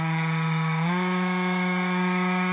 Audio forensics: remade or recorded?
remade